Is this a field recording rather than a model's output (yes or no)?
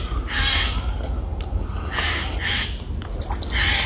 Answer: yes